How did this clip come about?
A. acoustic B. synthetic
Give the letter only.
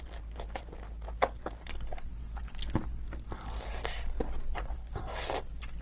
A